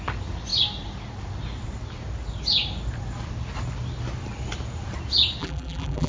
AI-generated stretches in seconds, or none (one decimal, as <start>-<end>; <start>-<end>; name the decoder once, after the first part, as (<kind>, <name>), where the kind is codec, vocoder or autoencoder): 5.4-6.1 (vocoder, BigVGAN v2)

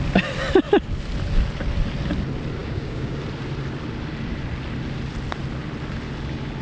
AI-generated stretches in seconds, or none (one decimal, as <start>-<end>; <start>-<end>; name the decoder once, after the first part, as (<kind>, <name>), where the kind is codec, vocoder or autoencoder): 2.6-3.2 (codec, DAC)

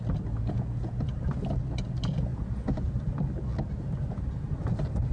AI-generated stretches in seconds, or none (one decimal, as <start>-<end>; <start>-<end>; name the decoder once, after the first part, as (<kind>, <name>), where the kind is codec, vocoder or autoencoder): 0.4-1.1 (vocoder, Vocos); 2.3-3.0

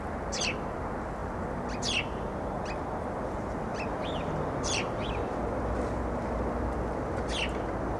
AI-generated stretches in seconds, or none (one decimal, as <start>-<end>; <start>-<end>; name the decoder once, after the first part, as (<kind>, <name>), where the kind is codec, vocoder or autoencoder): 3.7-5.4 (vocoder, BigVGAN v2)

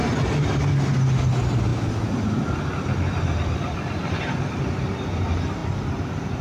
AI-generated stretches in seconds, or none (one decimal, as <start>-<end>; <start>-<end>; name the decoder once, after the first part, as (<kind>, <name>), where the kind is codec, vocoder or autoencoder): none

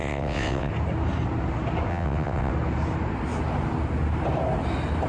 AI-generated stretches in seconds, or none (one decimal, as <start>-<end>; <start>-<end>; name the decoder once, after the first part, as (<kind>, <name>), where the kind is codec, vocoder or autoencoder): 0.0-0.7 (vocoder, WaveNeXt); 1.9-2.5

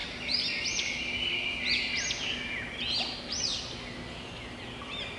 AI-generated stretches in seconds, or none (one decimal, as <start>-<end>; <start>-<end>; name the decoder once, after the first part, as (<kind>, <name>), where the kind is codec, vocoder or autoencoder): none